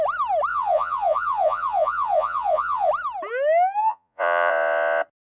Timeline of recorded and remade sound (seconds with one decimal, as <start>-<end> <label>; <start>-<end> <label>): 0.0-0.5 recorded; 0.5-2.9 remade; 2.9-3.8 recorded; 3.8-4.5 remade; 4.5-5.3 recorded